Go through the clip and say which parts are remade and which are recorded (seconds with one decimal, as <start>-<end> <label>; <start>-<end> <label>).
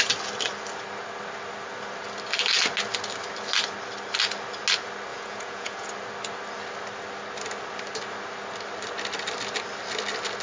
0.0-5.1 recorded; 5.1-5.9 remade; 5.9-10.4 recorded